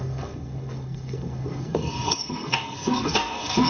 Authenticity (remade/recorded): remade